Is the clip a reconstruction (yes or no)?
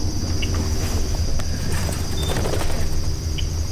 no